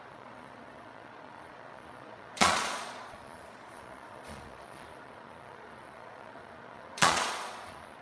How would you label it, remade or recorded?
remade